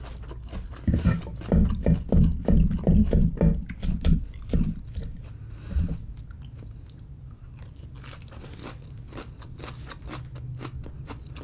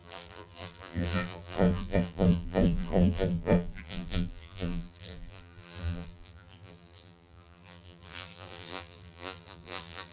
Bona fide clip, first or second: first